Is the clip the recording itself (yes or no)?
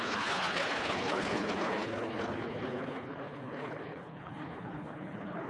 no